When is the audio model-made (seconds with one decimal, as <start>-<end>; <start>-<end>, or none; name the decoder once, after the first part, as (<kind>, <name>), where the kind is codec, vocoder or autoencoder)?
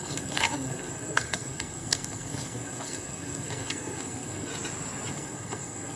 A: 0.0-4.5 (codec, SNAC); 5.1-6.0